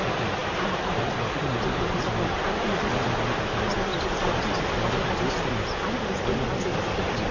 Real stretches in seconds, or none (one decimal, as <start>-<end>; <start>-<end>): 0.0-0.4; 2.9-3.9; 4.5-7.3